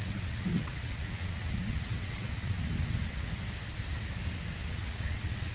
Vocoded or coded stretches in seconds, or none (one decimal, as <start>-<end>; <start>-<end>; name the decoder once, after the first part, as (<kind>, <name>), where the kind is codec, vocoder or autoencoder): 0.0-3.3 (vocoder, WaveNeXt); 4.6-5.5